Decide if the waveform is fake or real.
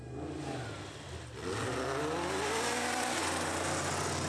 real